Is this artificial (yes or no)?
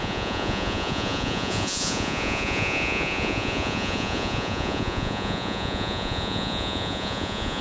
yes